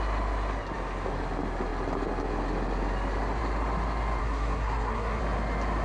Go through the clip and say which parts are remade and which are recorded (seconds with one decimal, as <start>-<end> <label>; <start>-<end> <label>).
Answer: 0.0-4.2 recorded; 4.2-5.2 remade; 5.2-5.8 recorded